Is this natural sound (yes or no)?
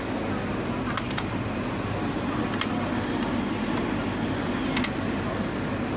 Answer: yes